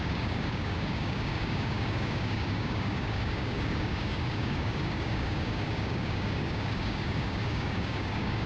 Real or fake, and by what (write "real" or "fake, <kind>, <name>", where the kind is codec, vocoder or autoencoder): fake, codec, DAC